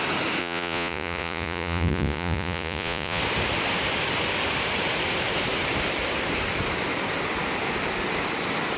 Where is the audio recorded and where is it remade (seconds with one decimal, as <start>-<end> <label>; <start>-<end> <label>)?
0.0-0.4 recorded; 0.4-3.2 remade; 3.2-8.8 recorded